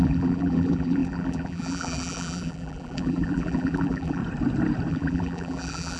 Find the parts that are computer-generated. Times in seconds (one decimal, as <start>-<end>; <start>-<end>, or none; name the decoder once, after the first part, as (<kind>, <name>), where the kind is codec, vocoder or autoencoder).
0.0-4.2 (vocoder, BigVGAN v2); 4.9-6.0